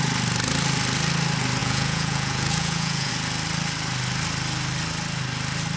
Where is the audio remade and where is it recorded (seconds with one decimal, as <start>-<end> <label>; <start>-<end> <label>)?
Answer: 0.0-1.6 recorded; 1.6-3.1 remade; 3.1-5.8 recorded